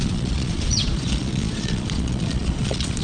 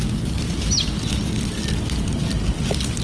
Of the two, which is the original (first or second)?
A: second